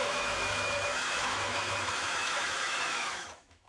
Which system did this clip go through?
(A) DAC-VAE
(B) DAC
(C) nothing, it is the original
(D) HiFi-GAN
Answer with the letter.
A